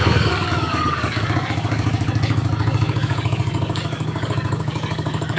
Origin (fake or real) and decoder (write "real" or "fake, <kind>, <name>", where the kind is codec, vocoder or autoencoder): fake, codec, DAC